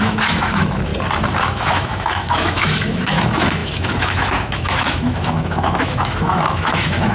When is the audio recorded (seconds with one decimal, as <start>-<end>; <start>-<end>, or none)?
0.9-1.4